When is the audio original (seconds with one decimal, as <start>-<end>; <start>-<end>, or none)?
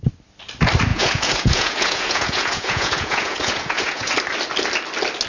0.0-0.9; 4.1-5.3